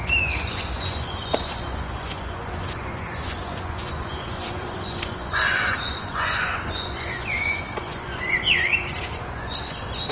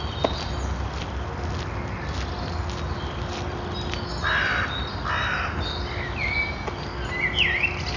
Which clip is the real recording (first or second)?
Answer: second